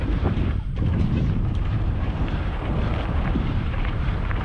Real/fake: fake